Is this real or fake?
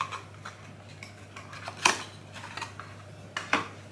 real